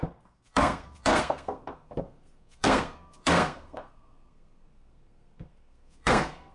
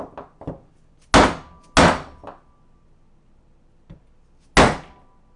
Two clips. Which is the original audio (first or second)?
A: second